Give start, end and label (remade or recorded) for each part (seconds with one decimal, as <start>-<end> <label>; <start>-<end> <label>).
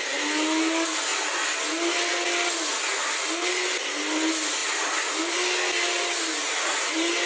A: 0.0-7.3 recorded